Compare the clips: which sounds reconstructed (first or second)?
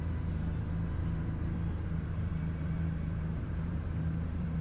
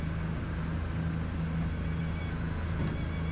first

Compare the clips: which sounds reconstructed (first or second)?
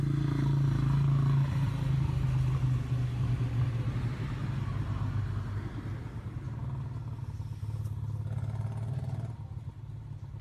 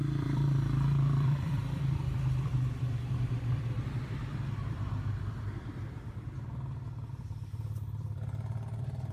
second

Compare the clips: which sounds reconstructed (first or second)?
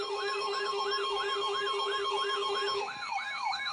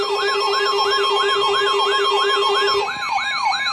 first